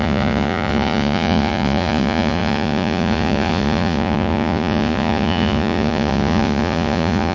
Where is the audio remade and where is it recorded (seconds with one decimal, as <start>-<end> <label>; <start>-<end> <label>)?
0.0-7.3 remade